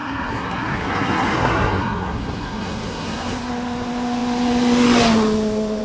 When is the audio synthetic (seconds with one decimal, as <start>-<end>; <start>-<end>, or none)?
0.0-3.5